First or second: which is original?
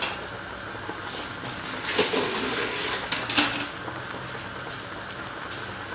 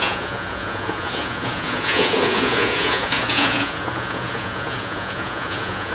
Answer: first